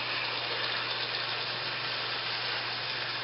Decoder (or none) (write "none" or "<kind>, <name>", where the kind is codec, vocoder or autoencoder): none